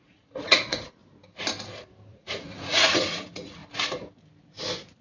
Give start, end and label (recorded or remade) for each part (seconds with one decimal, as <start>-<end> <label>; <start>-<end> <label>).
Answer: 0.0-1.0 remade; 1.0-2.1 recorded; 2.1-3.6 remade; 3.6-5.0 recorded